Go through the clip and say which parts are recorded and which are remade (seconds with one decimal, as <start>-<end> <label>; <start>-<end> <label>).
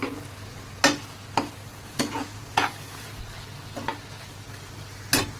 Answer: 0.0-1.7 recorded; 1.7-3.2 remade; 3.2-5.4 recorded